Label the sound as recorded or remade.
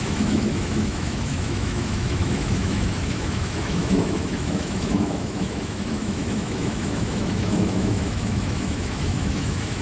remade